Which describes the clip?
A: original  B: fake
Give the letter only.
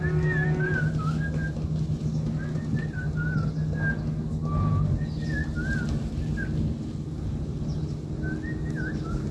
A